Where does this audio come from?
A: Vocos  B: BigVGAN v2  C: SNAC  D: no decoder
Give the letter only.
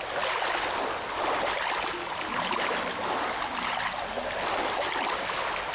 D